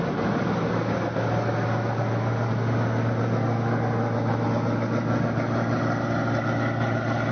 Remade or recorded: recorded